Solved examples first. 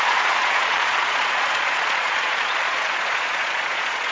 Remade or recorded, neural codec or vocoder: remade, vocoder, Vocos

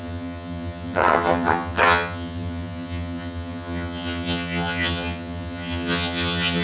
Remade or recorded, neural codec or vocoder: remade, vocoder, HiFi-GAN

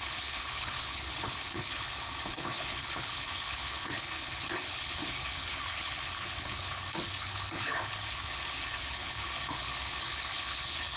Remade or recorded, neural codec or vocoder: remade, codec, HILCodec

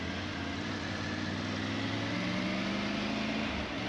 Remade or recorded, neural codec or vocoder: recorded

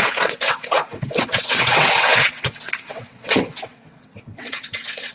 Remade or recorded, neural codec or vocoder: remade, vocoder, WaveNeXt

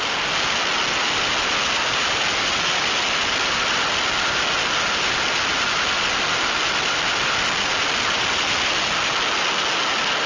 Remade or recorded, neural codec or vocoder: recorded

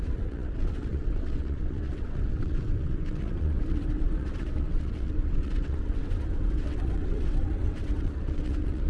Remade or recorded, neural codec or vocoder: remade, vocoder, WaveNeXt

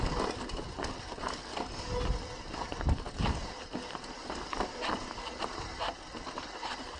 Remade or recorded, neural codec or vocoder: recorded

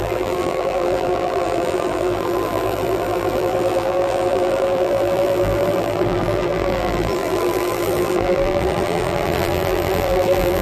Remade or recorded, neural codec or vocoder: remade, vocoder, BigVGAN v2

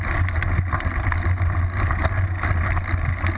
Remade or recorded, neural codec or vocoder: recorded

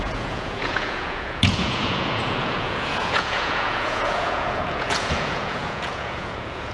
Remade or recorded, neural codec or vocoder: remade, vocoder, Vocos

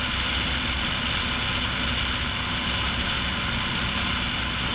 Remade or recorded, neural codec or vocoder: recorded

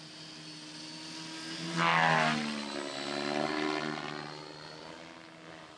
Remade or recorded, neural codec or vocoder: recorded